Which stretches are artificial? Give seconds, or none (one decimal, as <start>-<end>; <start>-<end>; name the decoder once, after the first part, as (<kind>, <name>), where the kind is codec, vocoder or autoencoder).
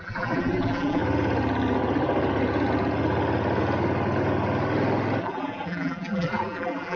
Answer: 0.0-1.0 (vocoder, BigVGAN v2); 5.2-7.0